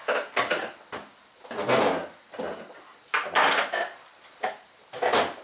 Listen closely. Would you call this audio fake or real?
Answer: real